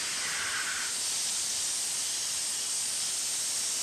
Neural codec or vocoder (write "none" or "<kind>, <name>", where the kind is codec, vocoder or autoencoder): none